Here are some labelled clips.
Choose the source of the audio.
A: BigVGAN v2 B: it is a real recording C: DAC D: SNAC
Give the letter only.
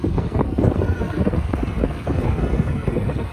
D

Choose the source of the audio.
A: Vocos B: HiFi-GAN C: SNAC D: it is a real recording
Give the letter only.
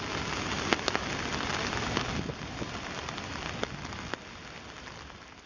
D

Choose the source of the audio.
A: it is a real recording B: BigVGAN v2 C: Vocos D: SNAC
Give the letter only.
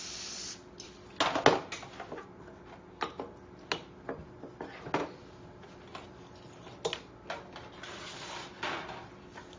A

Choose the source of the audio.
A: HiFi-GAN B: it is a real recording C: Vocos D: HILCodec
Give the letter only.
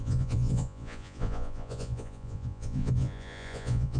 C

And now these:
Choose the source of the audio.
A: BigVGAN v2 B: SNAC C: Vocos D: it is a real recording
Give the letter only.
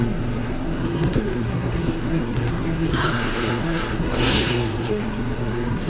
B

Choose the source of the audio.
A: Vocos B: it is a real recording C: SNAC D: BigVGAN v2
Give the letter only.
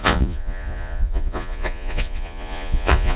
A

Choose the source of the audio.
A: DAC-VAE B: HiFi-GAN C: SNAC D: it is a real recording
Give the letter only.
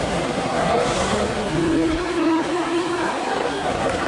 C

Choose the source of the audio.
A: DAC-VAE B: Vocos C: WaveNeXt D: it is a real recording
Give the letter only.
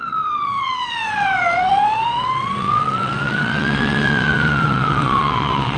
C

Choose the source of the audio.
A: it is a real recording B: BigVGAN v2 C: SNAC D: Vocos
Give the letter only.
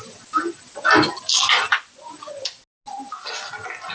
A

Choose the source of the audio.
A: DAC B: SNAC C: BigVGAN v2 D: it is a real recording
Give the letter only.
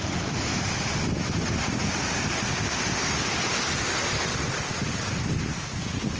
D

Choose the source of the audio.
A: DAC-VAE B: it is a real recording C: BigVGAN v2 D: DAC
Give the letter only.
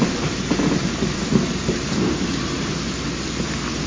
B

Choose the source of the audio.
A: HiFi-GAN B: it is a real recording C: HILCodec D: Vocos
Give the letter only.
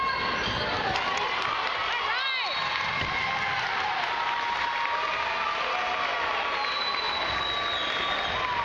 B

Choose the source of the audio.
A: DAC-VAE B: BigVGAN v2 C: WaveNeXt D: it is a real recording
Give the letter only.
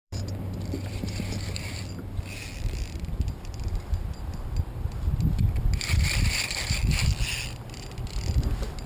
B